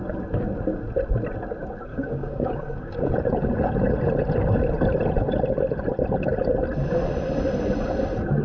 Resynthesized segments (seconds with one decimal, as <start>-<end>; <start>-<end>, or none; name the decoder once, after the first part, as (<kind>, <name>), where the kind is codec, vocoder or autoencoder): 1.9-3.1 (codec, DAC)